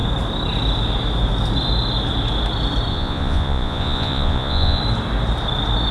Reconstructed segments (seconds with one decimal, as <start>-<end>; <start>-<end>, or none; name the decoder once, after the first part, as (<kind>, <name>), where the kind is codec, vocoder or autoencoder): 2.9-4.8 (vocoder, Vocos)